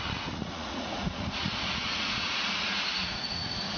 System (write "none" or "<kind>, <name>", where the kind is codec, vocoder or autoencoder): vocoder, Vocos